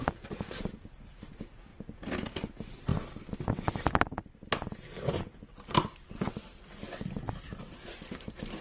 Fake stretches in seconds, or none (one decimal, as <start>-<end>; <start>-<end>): 0.0-1.7; 2.4-2.9; 7.6-8.6